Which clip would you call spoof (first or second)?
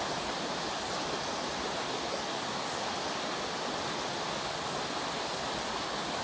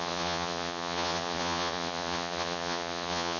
second